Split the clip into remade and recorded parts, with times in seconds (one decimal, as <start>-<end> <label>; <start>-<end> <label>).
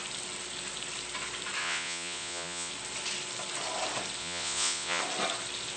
0.0-1.6 recorded; 1.6-2.7 remade; 2.7-4.2 recorded; 4.2-5.0 remade; 5.0-5.8 recorded